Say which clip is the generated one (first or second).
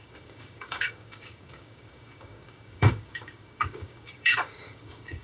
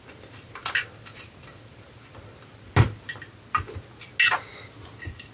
first